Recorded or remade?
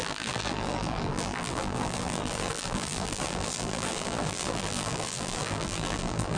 remade